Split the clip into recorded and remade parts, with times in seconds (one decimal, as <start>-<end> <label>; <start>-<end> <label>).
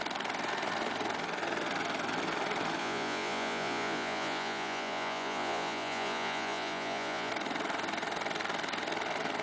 0.0-2.8 recorded; 2.8-7.3 remade; 7.3-9.4 recorded